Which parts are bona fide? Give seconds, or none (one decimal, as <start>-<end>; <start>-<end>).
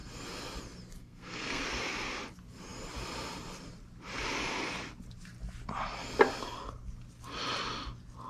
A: 0.0-1.0; 1.6-8.3